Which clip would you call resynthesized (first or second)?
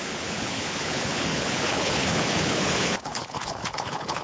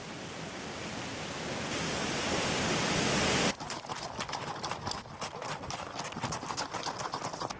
first